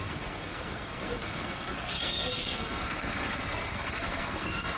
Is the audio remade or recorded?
remade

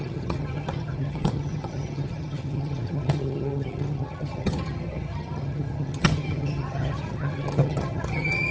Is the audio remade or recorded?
remade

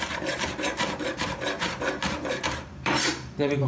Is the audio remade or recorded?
remade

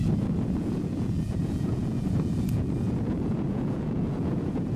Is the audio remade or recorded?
remade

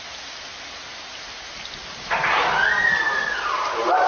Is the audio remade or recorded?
recorded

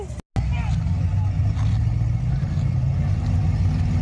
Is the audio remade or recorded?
recorded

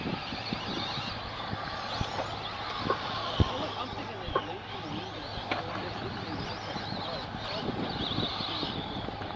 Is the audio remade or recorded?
recorded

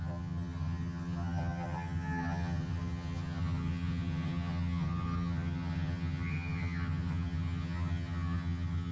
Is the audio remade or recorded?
remade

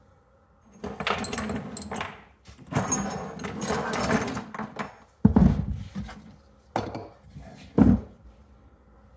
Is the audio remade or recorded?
recorded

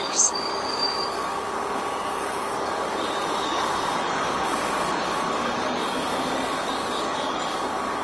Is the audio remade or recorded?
remade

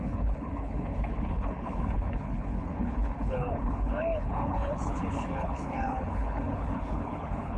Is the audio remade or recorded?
remade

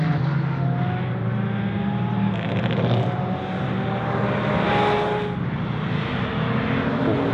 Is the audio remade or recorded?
recorded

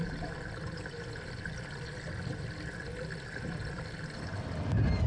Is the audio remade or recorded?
recorded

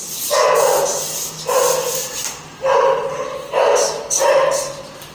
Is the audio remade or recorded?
recorded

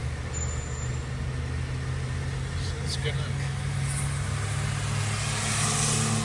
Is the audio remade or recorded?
recorded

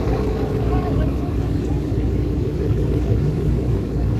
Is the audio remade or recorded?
remade